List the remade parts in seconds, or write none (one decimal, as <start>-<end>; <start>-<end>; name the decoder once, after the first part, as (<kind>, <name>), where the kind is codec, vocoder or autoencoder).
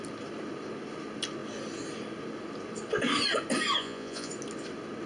3.8-4.3 (vocoder, Vocos)